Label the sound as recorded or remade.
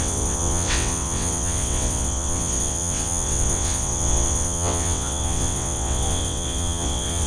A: remade